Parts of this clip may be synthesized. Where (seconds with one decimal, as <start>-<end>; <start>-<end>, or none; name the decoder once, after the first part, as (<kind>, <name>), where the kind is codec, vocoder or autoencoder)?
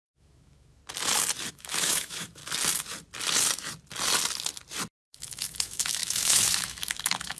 0.0-0.8 (autoencoder, DAC-VAE); 1.5-2.4; 4.9-7.4